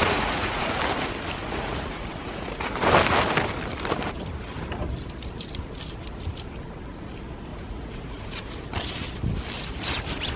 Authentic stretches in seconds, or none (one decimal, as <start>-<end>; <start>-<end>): 0.8-1.4; 2.7-7.5; 8.4-10.4